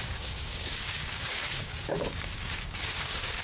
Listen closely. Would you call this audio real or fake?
fake